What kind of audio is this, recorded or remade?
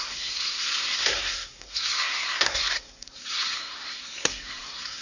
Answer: remade